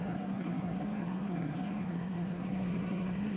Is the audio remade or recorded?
remade